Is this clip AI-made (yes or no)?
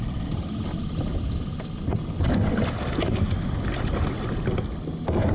no